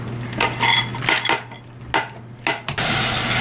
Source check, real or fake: real